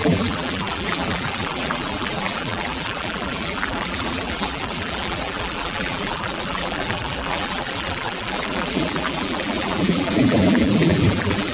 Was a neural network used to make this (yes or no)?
yes